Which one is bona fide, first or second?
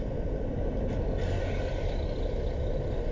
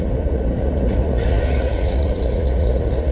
first